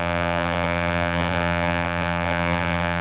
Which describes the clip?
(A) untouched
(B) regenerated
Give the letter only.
B